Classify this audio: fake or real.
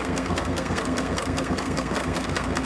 fake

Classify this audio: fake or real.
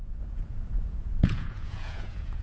fake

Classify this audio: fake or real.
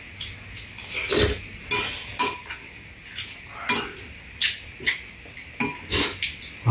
real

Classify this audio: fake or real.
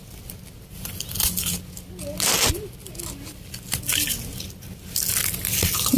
real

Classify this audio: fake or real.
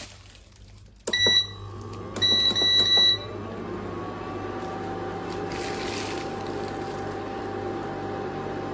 real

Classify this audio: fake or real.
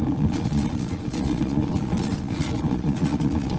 fake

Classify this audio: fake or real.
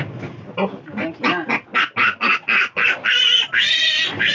real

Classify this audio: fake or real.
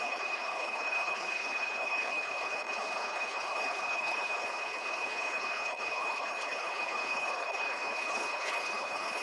fake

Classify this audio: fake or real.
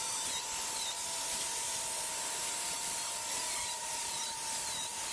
fake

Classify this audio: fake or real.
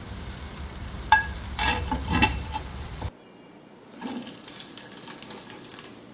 fake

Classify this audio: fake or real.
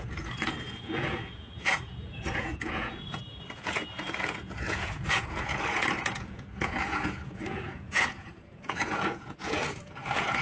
fake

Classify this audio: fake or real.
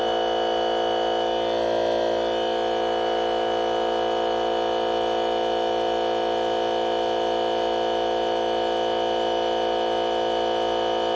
real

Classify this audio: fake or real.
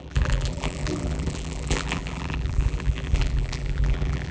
fake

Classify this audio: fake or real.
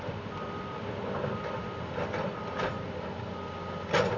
real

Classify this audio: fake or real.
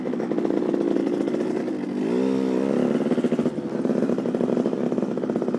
real